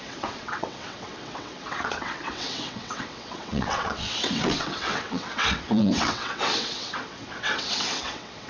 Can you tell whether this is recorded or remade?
remade